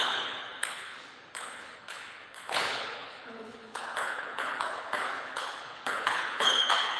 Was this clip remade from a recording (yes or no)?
yes